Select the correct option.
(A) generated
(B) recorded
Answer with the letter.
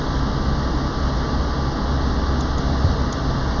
B